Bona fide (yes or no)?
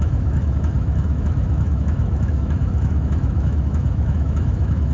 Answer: no